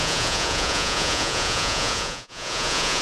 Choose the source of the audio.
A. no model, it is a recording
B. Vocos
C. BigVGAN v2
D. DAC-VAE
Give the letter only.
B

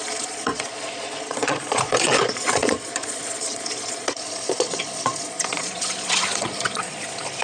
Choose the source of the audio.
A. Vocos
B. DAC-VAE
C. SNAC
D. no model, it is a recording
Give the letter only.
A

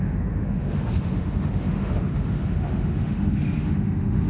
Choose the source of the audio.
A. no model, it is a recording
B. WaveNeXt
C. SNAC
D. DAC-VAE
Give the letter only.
D